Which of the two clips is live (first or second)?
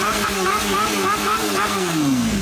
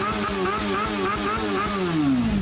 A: second